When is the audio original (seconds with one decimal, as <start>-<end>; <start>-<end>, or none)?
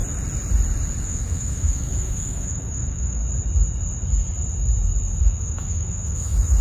0.0-1.0; 3.2-5.2